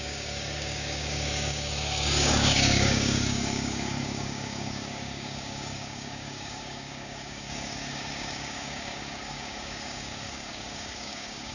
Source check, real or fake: fake